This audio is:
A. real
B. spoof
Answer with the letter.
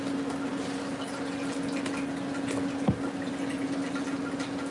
A